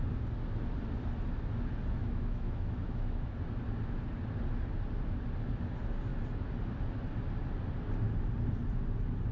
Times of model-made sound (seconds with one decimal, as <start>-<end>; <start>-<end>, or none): 2.0-3.3